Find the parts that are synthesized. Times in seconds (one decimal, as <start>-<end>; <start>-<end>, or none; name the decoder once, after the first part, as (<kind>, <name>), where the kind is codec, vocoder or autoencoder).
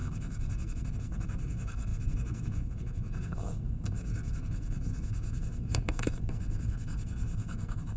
0.0-8.0 (codec, SNAC)